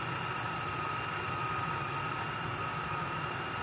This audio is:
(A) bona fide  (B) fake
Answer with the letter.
A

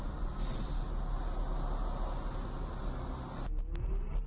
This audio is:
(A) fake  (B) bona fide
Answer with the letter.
B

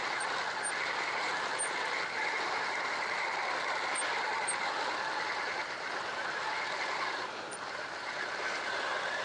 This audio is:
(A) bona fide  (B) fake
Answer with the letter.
A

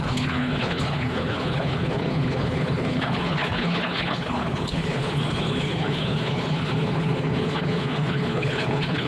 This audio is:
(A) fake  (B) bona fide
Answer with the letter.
A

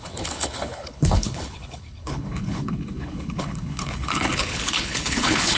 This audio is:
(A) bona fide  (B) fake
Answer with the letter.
B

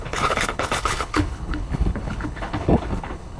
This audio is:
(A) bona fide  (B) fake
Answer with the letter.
B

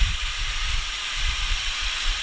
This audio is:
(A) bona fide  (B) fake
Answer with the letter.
A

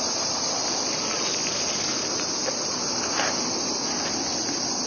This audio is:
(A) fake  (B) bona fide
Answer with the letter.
B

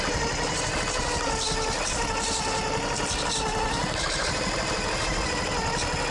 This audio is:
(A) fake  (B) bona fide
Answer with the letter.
B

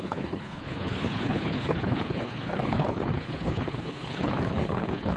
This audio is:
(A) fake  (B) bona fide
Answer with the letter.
A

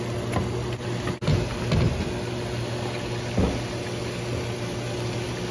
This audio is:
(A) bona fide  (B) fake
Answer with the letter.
A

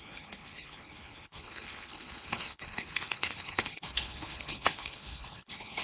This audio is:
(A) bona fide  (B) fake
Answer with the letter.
B